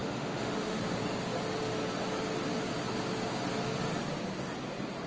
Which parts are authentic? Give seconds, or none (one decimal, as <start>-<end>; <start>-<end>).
0.8-5.1